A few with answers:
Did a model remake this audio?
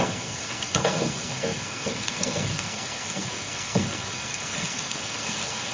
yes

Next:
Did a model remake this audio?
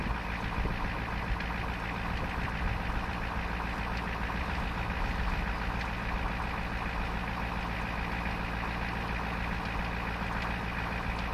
no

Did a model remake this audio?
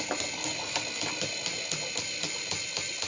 no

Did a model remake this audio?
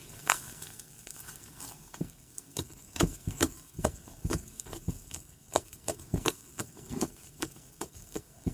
yes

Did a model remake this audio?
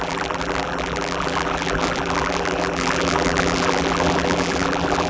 yes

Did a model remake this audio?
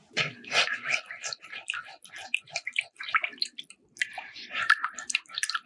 no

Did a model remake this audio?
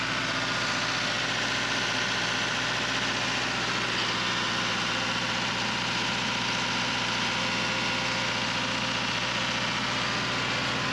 no